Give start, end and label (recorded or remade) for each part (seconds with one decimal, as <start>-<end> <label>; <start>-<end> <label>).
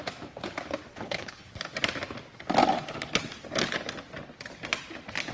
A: 0.0-0.9 recorded; 0.9-1.5 remade; 1.5-5.3 recorded